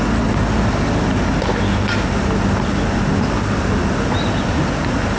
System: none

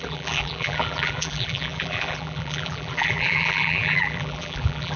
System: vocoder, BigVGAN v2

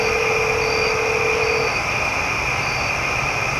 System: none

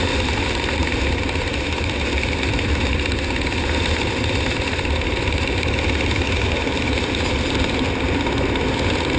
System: none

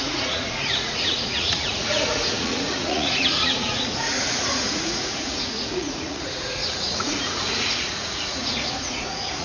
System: vocoder, Vocos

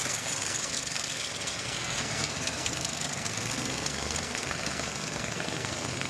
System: codec, SNAC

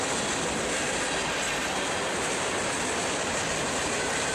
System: none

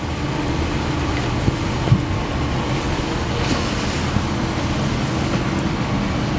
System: none